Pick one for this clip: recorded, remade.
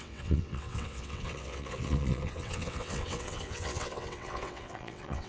remade